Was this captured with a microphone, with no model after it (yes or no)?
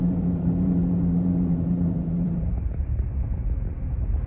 no